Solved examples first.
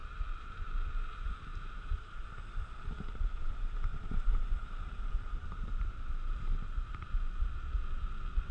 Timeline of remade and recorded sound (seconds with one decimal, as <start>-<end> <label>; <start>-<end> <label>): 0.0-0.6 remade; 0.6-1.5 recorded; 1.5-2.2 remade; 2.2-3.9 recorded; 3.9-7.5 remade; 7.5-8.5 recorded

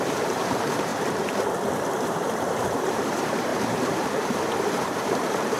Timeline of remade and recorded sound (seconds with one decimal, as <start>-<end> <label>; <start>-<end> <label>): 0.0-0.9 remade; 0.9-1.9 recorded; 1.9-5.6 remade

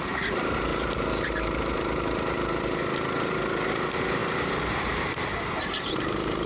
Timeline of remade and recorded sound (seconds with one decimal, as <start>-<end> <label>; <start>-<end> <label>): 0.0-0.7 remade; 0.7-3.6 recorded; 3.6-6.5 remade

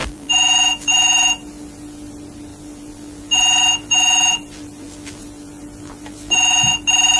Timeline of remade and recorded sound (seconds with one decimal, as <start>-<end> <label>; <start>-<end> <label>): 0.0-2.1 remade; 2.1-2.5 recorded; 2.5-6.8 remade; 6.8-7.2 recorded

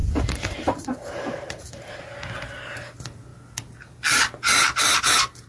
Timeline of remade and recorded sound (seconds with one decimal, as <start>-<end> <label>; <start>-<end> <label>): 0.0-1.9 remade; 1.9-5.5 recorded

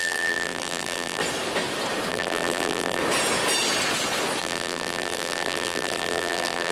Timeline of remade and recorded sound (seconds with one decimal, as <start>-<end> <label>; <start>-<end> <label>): 0.0-1.2 remade; 1.2-2.1 recorded; 2.1-3.0 remade; 3.0-4.4 recorded; 4.4-6.7 remade

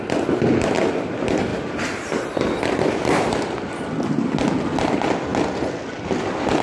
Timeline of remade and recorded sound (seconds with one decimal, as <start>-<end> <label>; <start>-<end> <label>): 0.0-1.5 recorded; 1.5-3.5 remade; 3.5-6.6 recorded